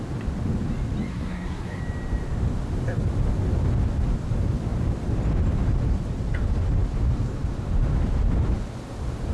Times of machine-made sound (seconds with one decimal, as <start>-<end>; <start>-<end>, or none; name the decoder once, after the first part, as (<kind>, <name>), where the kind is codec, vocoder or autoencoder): 1.1-1.8 (codec, SNAC)